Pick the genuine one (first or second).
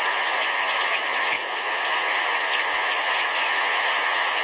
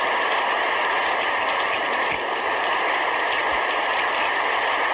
second